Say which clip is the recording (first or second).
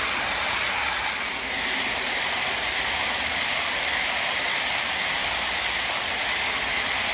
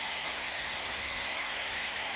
first